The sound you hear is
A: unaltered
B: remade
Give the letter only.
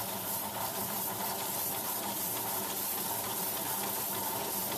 B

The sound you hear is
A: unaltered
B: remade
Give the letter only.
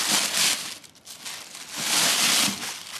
A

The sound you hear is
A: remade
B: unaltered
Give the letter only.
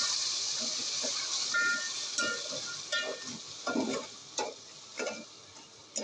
A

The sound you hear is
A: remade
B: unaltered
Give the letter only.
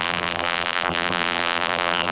A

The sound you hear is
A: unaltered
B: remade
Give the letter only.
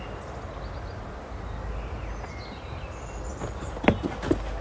A